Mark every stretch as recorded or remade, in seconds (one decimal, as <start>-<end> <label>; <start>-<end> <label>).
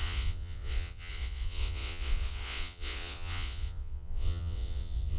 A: 0.0-5.2 remade